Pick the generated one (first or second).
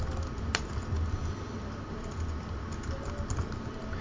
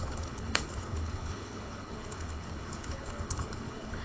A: second